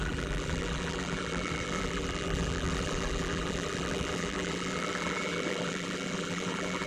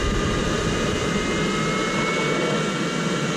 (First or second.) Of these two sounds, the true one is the second